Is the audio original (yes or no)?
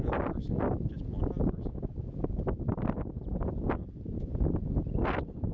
yes